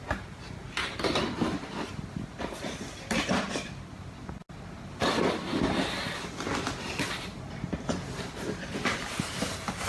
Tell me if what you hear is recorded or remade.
recorded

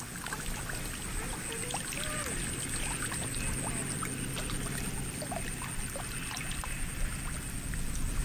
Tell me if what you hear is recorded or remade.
recorded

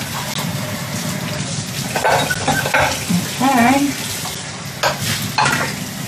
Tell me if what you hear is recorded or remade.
recorded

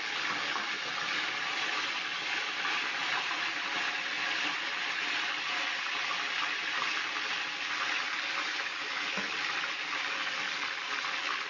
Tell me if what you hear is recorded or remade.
recorded